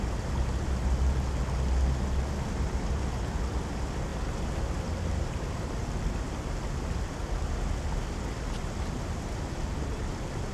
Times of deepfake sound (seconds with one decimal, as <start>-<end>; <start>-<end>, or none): none

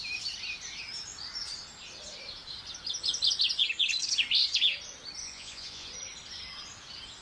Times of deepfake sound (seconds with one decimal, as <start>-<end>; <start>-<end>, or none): 5.2-5.9

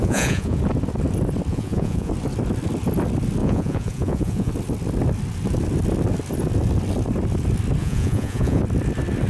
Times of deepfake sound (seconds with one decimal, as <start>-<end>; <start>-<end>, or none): 0.0-0.6; 1.5-2.1; 3.4-4.5; 7.8-8.6

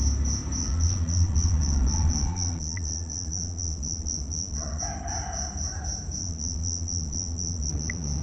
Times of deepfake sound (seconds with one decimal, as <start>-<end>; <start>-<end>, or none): 0.6-4.8; 6.2-8.2